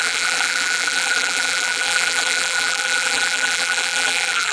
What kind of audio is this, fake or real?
fake